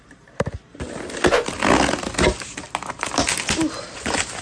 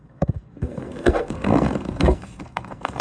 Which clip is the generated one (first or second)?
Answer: second